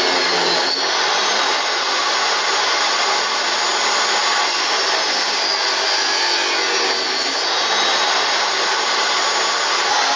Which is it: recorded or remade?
recorded